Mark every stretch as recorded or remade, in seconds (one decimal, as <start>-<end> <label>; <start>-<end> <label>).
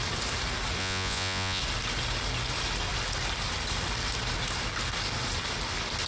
0.0-0.8 recorded; 0.8-1.6 remade; 1.6-6.1 recorded